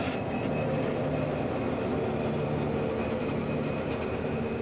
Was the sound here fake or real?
real